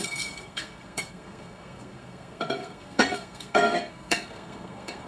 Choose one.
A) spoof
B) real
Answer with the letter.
A